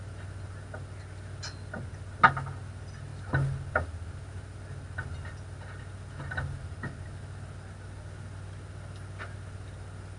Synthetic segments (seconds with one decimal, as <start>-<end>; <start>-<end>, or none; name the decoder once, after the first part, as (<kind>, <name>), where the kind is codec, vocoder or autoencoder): none